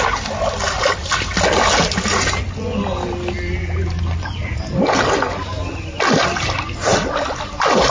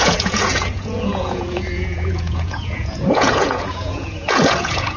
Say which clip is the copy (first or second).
second